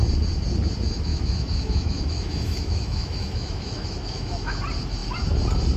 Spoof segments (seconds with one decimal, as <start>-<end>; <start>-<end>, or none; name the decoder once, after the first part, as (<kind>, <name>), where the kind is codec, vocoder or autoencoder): 1.1-4.6 (autoencoder, DAC-VAE)